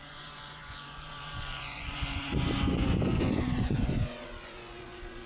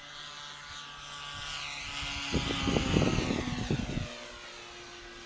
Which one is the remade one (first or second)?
first